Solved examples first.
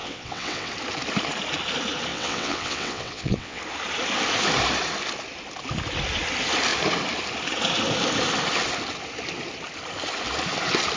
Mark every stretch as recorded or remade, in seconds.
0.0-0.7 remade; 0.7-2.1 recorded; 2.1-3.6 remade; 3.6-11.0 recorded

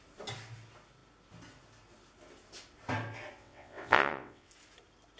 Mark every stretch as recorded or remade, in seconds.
0.0-3.4 recorded; 3.4-4.5 remade; 4.5-5.2 recorded

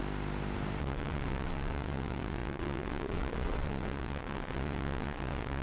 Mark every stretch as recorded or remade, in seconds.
0.0-0.8 recorded; 0.8-5.6 remade

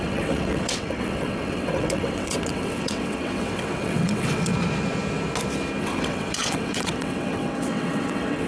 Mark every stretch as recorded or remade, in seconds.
0.0-4.5 remade; 4.5-5.8 recorded; 5.8-8.5 remade